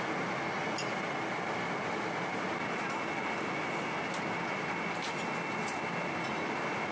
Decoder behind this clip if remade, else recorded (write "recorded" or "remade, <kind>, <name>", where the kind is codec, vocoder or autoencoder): recorded